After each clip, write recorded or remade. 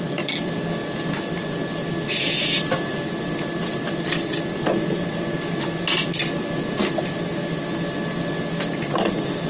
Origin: recorded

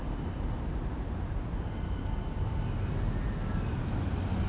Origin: recorded